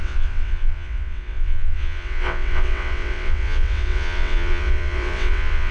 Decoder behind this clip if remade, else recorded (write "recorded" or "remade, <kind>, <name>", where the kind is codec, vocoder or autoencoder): remade, vocoder, WaveNeXt